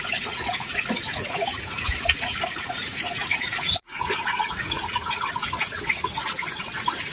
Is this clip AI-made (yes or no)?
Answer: yes